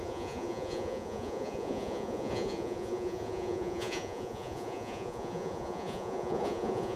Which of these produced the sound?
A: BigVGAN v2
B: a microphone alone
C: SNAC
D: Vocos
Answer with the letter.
D